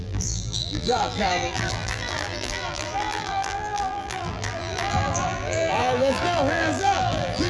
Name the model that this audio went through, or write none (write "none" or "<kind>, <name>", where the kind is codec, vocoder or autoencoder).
vocoder, BigVGAN v2